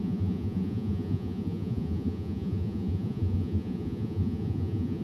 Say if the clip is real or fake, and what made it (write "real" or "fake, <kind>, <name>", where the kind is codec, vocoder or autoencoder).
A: fake, vocoder, Vocos